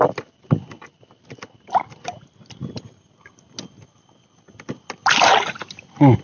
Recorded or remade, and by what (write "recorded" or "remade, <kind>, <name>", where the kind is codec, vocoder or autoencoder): recorded